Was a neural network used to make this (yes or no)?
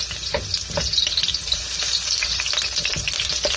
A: no